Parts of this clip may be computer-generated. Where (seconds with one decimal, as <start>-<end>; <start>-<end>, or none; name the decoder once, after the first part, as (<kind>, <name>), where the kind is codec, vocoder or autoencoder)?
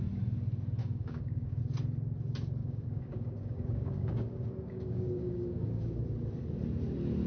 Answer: 0.8-1.6 (codec, DAC); 2.6-6.0